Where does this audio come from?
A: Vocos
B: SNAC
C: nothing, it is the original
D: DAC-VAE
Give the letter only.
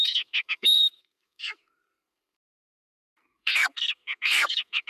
B